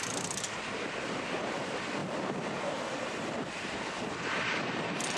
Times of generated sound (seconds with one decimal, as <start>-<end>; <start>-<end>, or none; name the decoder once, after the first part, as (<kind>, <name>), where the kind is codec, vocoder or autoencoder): 2.0-5.2 (vocoder, BigVGAN v2)